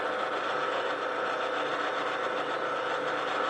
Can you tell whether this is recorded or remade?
recorded